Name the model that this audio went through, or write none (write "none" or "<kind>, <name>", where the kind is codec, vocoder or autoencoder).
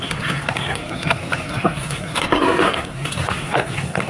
codec, SNAC